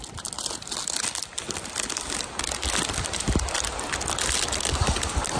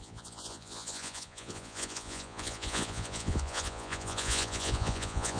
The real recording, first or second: first